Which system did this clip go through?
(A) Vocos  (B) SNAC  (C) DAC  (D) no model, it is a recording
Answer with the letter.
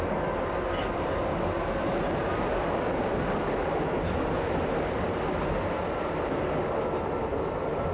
D